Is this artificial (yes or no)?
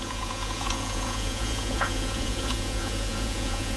yes